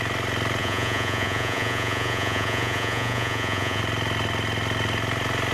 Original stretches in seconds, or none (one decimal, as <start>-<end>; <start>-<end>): 0.0-0.6; 3.8-5.5